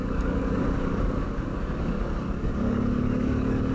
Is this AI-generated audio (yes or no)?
yes